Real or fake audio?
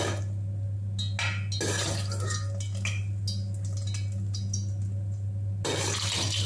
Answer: real